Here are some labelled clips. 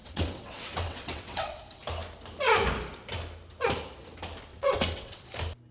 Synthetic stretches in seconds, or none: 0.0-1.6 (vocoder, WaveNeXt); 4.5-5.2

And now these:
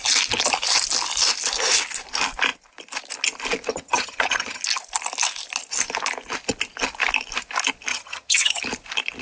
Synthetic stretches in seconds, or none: 3.7-4.6 (vocoder, HiFi-GAN); 7.9-8.6

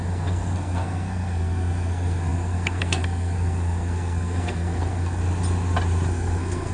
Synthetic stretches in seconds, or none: 0.0-5.2 (codec, SNAC); 6.1-6.7

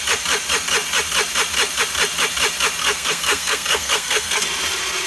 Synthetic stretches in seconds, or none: 2.8-4.4 (codec, SNAC)

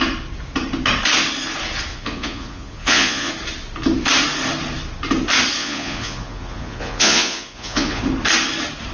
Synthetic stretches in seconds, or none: 1.9-3.3 (vocoder, Vocos); 5.6-8.0

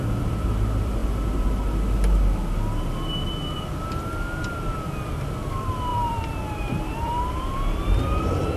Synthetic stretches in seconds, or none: 0.0-1.0 (vocoder, BigVGAN v2); 5.5-8.6